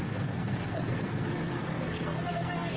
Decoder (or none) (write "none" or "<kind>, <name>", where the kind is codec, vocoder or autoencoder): codec, SNAC